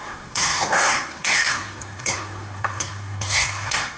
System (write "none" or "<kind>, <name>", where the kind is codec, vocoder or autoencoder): codec, SNAC